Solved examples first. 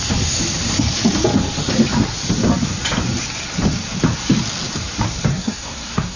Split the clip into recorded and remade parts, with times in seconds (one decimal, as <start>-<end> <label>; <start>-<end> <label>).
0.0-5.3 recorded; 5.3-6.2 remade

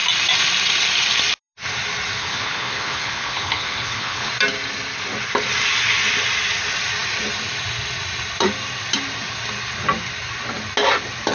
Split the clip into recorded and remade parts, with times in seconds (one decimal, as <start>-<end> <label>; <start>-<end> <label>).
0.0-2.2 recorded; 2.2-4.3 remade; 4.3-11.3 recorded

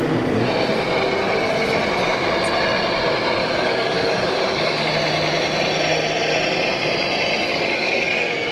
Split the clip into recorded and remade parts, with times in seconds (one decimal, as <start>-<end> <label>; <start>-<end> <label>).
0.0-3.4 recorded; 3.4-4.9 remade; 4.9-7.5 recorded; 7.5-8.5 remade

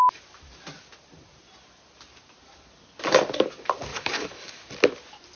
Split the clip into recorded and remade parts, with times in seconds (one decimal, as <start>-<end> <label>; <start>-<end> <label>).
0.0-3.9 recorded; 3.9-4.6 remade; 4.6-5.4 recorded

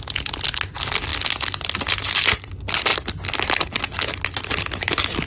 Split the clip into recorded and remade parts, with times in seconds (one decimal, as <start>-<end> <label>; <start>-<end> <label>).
0.0-5.3 recorded

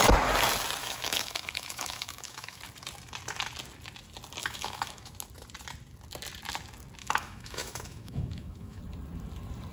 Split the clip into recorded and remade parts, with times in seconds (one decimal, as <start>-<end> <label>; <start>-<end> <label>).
0.0-0.8 recorded; 0.8-2.6 remade; 2.6-4.4 recorded; 4.4-5.1 remade; 5.1-7.0 recorded; 7.0-8.8 remade; 8.8-9.7 recorded